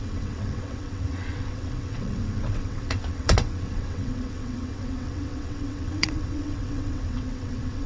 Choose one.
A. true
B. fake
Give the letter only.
B